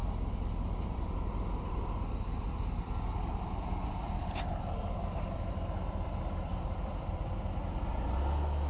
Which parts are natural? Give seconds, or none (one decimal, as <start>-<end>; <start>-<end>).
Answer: 1.8-2.5; 5.5-6.5; 7.3-8.7